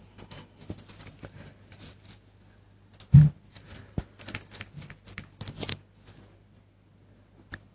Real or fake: real